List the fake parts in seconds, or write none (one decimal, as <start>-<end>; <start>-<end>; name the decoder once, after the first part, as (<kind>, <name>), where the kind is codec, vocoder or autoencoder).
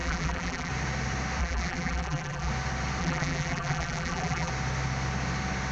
0.0-0.7 (vocoder, BigVGAN v2); 1.4-2.5; 3.0-4.5